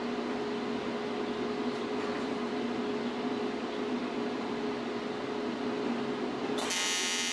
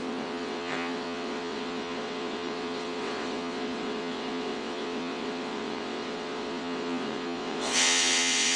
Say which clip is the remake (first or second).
second